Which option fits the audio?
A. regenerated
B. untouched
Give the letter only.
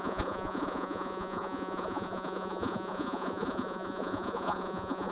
A